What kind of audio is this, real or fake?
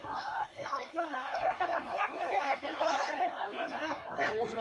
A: fake